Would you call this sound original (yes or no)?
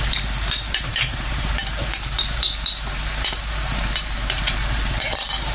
no